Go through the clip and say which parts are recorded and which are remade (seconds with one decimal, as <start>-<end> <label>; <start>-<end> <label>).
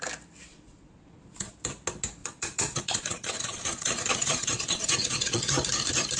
0.0-0.5 recorded; 0.5-1.5 remade; 1.5-2.2 recorded; 2.2-5.5 remade; 5.5-6.2 recorded